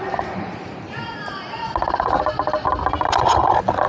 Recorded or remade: recorded